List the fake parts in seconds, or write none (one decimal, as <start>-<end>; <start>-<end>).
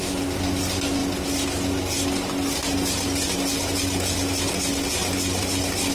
none